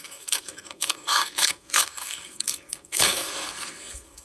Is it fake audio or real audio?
fake